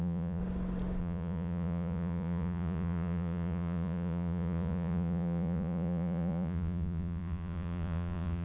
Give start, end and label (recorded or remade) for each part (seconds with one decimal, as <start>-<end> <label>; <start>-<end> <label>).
0.0-0.4 remade; 0.4-1.0 recorded; 1.0-8.4 remade